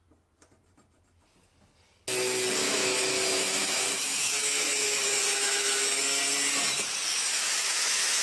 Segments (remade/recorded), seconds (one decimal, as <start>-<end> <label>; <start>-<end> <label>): 0.0-2.6 recorded; 2.6-6.0 remade; 6.0-7.1 recorded; 7.1-8.2 remade